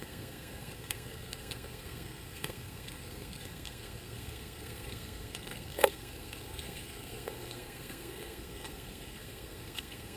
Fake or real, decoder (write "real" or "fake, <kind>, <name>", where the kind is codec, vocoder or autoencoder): fake, codec, SNAC